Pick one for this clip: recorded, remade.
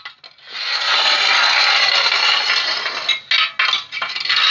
recorded